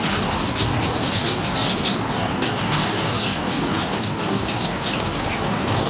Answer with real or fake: fake